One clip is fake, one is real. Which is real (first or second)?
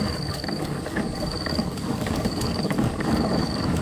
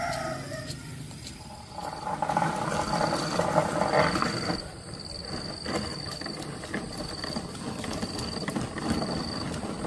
second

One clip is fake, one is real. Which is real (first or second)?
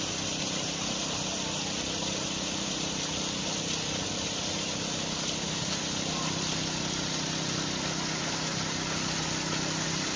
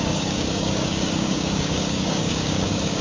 first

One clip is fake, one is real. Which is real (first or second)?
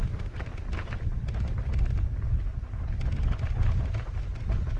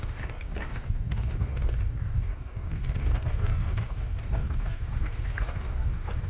first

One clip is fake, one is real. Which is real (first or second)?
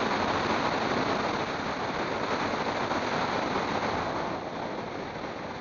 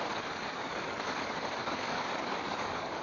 first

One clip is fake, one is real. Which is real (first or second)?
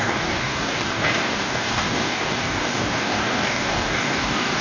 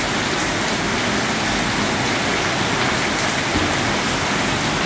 second